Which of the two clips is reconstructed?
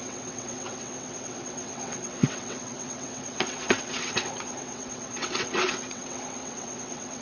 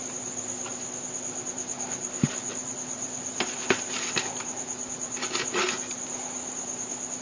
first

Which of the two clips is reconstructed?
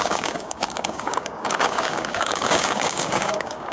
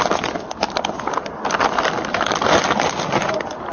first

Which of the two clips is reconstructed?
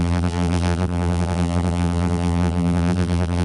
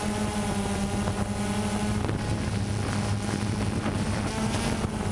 first